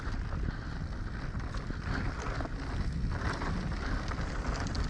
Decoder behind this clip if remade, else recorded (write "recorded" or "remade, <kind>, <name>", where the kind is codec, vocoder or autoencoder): recorded